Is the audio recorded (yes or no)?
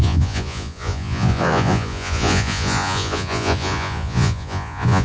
no